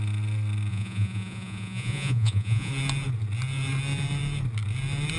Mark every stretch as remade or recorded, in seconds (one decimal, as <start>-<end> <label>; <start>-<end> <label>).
0.0-0.7 recorded; 0.7-2.7 remade; 2.7-5.2 recorded